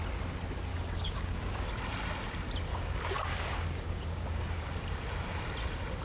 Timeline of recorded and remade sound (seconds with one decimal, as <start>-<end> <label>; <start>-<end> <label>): 0.0-0.7 recorded; 0.7-1.7 remade; 1.7-2.7 recorded; 2.7-4.7 remade; 4.7-6.0 recorded